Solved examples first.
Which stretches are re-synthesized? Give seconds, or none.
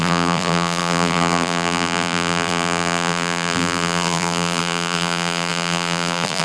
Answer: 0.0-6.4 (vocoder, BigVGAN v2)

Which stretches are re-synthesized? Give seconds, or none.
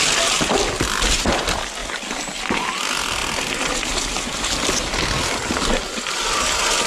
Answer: none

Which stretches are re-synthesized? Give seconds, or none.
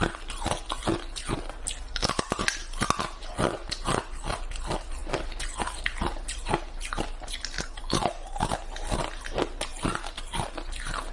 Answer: none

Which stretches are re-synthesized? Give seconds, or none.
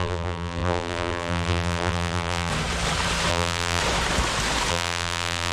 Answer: 0.0-2.5 (vocoder, BigVGAN v2); 3.3-3.8; 4.7-5.5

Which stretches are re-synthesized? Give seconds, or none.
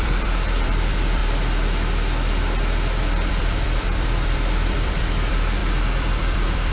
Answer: 0.0-1.2 (vocoder, BigVGAN v2); 3.3-6.7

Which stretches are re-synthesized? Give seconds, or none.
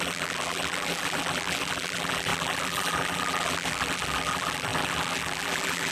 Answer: 0.0-5.9 (vocoder, BigVGAN v2)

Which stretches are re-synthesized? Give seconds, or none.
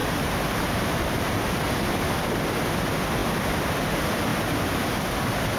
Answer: 0.0-1.7 (vocoder, BigVGAN v2)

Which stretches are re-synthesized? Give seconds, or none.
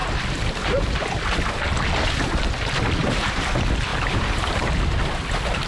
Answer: 3.0-3.5 (vocoder, BigVGAN v2); 3.9-4.7